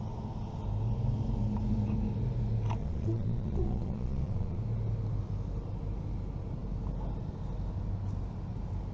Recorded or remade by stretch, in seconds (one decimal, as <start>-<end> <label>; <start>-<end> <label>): 0.0-2.8 recorded; 2.8-4.6 remade; 4.6-8.9 recorded